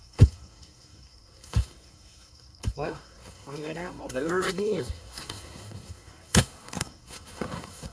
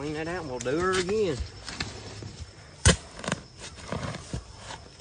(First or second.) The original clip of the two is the second